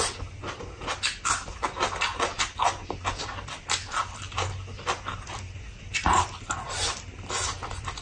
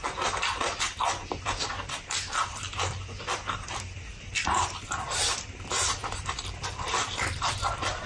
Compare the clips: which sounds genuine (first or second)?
first